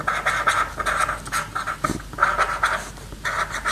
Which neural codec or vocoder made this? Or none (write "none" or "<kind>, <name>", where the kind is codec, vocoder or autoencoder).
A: none